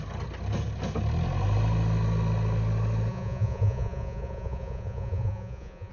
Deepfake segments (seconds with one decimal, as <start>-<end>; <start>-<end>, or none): 3.1-5.9